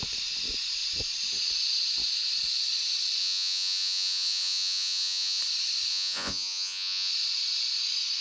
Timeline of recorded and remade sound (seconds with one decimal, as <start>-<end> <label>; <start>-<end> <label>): 0.0-3.2 recorded; 3.2-5.4 remade; 5.4-5.9 recorded; 5.9-7.1 remade; 7.1-8.2 recorded